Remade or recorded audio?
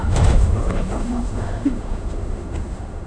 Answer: remade